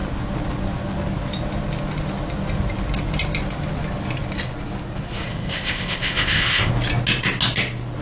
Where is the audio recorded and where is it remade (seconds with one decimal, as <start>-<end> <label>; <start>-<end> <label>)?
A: 0.0-5.3 recorded; 5.3-6.7 remade; 6.7-8.0 recorded